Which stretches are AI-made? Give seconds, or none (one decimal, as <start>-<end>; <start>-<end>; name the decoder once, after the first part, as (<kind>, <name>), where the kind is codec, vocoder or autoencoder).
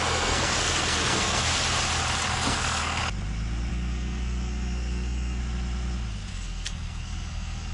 0.0-1.5 (codec, SNAC); 2.3-3.0; 3.7-5.4; 6.3-7.7